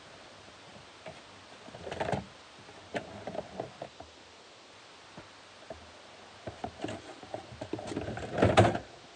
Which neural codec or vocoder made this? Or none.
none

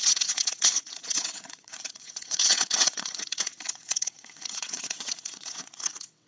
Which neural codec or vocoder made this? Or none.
vocoder, WaveNeXt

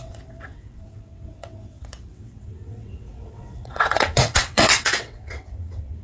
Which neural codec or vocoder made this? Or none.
vocoder, WaveNeXt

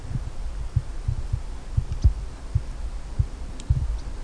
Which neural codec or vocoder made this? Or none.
none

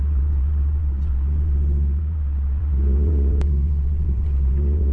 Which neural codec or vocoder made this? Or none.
vocoder, WaveNeXt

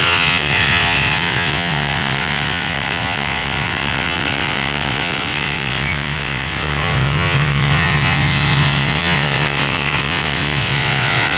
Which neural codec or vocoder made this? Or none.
vocoder, WaveNeXt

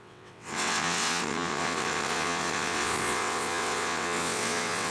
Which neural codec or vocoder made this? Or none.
vocoder, WaveNeXt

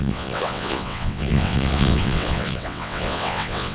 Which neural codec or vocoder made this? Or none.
vocoder, WaveNeXt